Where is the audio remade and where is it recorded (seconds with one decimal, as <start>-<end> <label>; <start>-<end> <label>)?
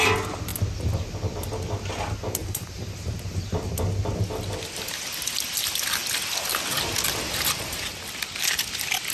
0.0-2.4 recorded; 2.4-3.7 remade; 3.7-9.1 recorded